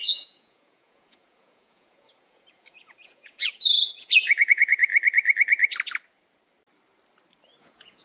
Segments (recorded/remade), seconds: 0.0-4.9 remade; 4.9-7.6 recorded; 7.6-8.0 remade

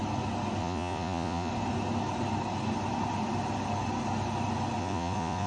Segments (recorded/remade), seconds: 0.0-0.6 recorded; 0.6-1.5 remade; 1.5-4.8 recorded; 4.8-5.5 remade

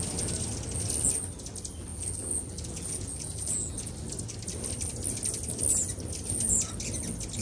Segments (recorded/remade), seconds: 0.0-1.9 recorded; 1.9-3.9 remade; 3.9-7.4 recorded

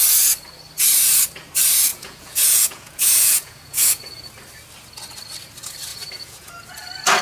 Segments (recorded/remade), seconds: 0.0-1.9 recorded; 1.9-4.3 remade; 4.3-5.9 recorded; 5.9-6.5 remade; 6.5-7.2 recorded

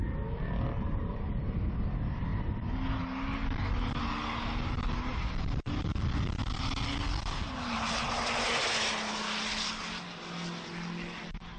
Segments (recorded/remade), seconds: 0.0-11.6 recorded

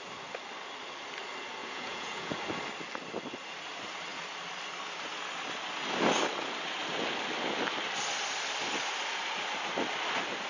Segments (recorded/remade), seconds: 0.0-1.6 recorded; 1.6-2.4 remade; 2.4-10.5 recorded

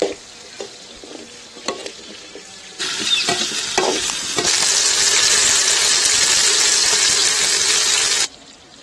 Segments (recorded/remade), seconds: 0.0-8.8 recorded

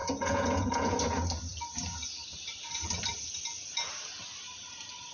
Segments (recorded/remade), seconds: 0.0-1.0 remade; 1.0-5.1 recorded